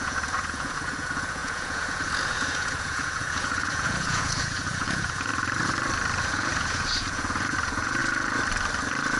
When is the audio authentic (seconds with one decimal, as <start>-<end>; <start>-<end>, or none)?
5.3-6.2; 8.0-9.2